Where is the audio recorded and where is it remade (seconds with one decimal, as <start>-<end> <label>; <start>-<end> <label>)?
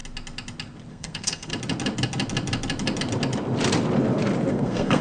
0.0-0.9 recorded; 0.9-1.5 remade; 1.5-4.5 recorded; 4.5-5.0 remade